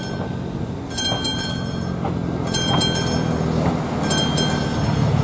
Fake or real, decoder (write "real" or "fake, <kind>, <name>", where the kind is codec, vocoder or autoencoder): real